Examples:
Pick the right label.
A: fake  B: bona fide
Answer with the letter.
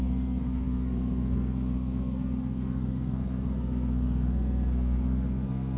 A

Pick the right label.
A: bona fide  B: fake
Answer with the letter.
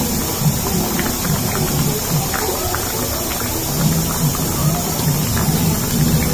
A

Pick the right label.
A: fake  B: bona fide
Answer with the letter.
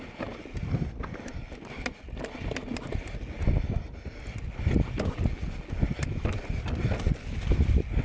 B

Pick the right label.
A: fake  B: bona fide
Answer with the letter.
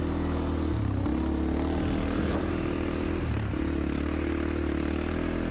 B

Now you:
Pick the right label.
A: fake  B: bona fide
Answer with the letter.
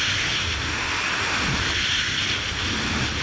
B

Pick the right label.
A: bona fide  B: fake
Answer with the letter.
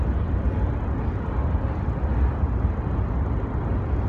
A